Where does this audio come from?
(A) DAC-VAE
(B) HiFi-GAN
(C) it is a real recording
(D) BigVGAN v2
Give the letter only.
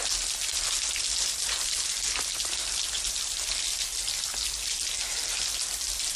C